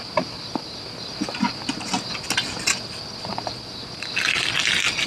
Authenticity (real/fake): real